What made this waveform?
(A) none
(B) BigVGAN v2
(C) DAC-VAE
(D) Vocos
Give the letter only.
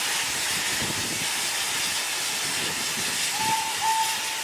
A